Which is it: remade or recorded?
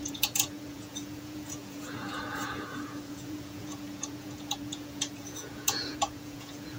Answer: remade